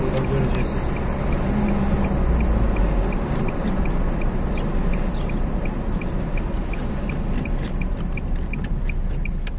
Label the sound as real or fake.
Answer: real